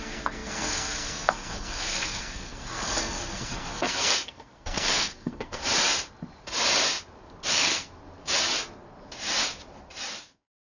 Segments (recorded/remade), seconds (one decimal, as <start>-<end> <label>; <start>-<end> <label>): 0.0-5.6 remade; 5.6-7.5 recorded; 7.5-7.9 remade; 7.9-10.2 recorded; 10.2-10.7 remade